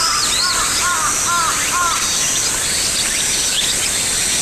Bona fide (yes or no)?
yes